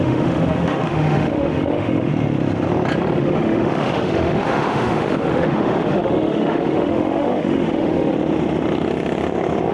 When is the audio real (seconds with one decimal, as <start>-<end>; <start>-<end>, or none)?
2.1-3.2; 8.1-9.7